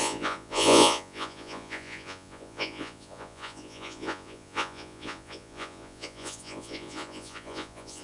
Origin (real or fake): fake